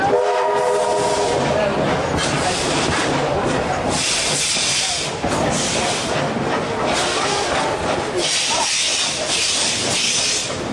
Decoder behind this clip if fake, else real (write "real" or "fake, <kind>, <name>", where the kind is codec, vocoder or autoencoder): real